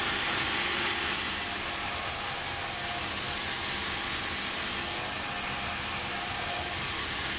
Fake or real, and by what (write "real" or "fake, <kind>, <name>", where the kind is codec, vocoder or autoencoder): real